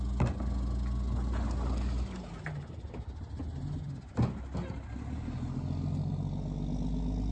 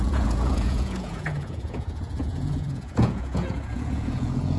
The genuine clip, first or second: first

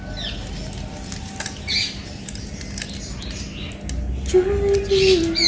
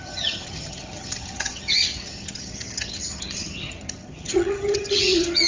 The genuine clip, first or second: first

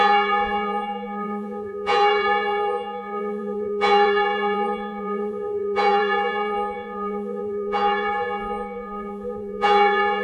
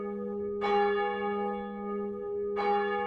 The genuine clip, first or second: second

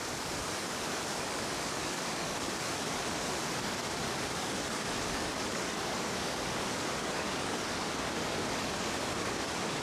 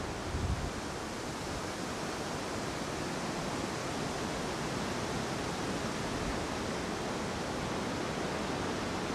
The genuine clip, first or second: second